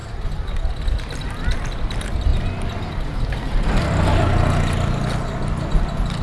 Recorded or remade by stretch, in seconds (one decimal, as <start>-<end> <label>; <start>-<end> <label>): 0.0-6.2 recorded